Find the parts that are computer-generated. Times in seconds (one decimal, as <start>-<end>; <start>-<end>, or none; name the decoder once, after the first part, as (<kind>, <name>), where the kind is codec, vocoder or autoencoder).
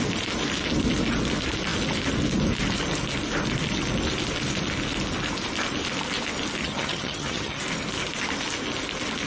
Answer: 6.6-7.6 (vocoder, HiFi-GAN)